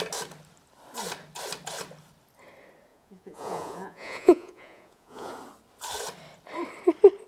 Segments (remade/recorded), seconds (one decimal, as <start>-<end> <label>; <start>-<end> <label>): 0.0-2.9 recorded; 2.9-5.3 remade; 5.3-7.3 recorded

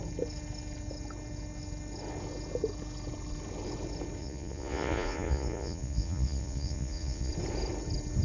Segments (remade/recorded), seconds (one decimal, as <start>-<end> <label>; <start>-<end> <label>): 0.0-4.2 recorded; 4.2-7.3 remade; 7.3-8.2 recorded